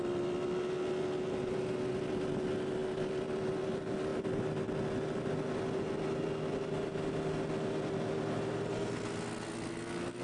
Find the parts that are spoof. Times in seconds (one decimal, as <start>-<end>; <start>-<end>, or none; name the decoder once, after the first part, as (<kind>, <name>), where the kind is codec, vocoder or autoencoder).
none